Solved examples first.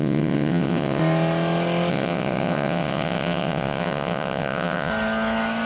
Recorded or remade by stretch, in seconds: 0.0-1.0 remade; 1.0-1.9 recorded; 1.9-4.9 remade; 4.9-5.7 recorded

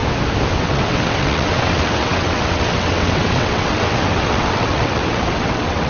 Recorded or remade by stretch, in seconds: 0.0-0.5 recorded; 0.5-5.9 remade